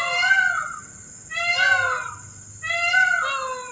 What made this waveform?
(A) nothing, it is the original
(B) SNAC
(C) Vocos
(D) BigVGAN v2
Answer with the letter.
A